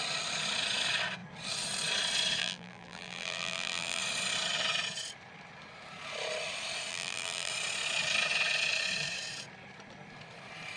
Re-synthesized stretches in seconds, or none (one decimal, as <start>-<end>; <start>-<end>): 2.4-4.0; 6.9-7.5